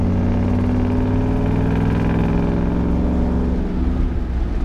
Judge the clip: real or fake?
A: real